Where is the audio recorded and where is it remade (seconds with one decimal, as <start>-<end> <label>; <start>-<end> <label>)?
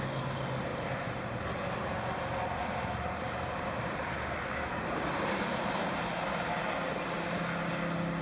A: 0.0-0.7 recorded; 0.7-1.4 remade; 1.4-2.6 recorded; 2.6-6.6 remade; 6.6-8.2 recorded